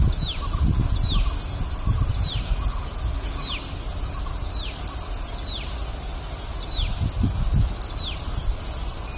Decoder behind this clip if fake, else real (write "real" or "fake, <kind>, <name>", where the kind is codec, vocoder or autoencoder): real